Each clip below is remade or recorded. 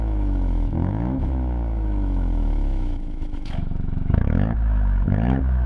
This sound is remade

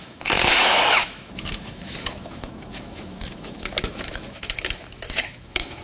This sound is remade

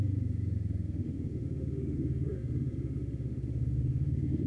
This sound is remade